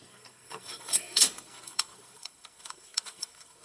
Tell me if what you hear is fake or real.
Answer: fake